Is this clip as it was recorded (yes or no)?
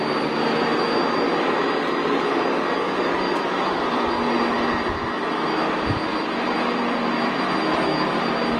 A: yes